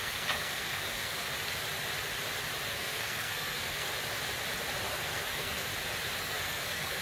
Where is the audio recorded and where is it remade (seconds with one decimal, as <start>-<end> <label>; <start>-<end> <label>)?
0.0-1.3 remade; 1.3-2.7 recorded; 2.7-3.9 remade; 3.9-4.9 recorded; 4.9-5.7 remade; 5.7-6.2 recorded; 6.2-7.0 remade